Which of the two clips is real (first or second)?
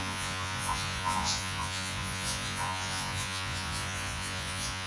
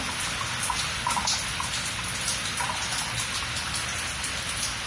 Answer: second